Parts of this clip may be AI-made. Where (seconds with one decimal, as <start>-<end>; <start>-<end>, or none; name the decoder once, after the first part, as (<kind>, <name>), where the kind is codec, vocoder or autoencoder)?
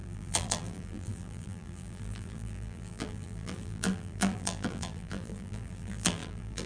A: 0.0-6.7 (vocoder, BigVGAN v2)